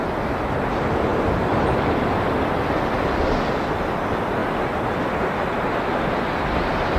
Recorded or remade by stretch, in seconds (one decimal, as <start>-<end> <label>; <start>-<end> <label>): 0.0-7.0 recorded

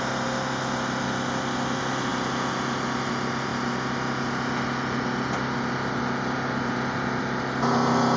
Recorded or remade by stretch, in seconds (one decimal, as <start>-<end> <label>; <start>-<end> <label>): 0.0-8.2 recorded

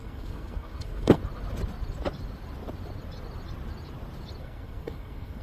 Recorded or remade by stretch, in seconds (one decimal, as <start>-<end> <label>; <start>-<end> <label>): 0.0-1.2 remade; 1.2-4.4 recorded; 4.4-5.4 remade

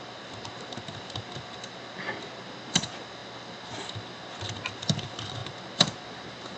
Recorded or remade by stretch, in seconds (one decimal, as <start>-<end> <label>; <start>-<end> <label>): 0.0-6.6 recorded

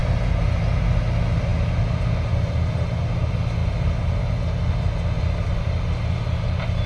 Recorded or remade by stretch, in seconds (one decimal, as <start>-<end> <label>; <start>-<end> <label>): 0.0-6.9 recorded

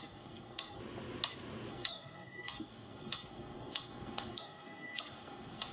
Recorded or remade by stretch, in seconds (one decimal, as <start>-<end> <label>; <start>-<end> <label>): 0.0-0.8 remade; 0.8-1.7 recorded; 1.7-5.7 remade